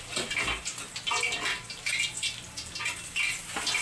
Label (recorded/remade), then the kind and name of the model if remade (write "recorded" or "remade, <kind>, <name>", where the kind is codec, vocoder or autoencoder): recorded